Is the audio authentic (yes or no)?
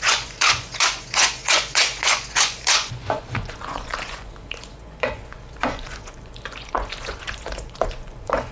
no